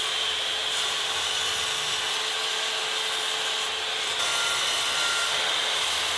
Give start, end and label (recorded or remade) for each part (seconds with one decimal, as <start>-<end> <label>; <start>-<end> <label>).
0.0-1.4 remade; 1.4-5.1 recorded; 5.1-6.2 remade